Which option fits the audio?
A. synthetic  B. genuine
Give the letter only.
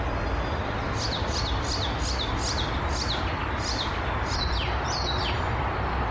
B